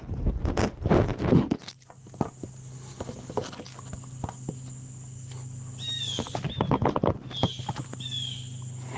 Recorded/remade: recorded